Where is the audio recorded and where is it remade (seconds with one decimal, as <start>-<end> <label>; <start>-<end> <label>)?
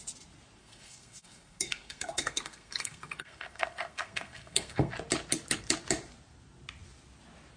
0.0-0.6 recorded; 0.6-4.9 remade; 4.9-7.6 recorded